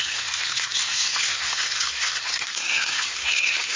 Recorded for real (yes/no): no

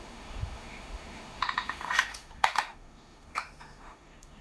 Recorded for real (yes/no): no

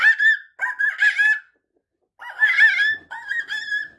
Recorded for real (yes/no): yes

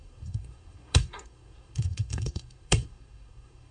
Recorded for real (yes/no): no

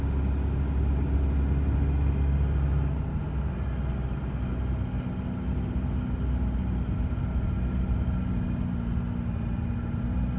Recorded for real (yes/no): yes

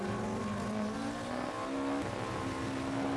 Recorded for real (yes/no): yes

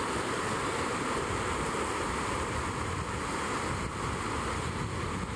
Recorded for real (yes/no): yes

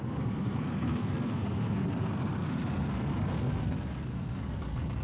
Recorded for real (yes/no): no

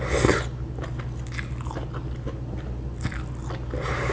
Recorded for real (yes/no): yes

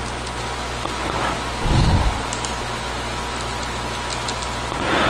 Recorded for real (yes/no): yes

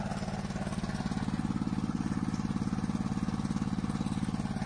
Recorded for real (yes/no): yes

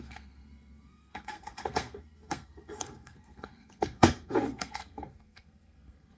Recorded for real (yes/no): no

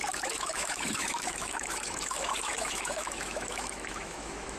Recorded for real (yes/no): no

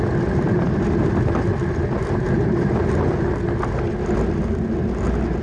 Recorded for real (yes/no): yes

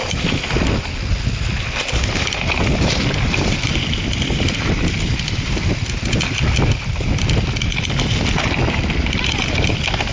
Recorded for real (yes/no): yes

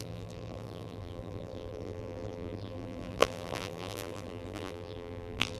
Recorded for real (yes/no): no